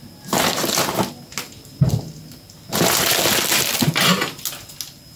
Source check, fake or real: real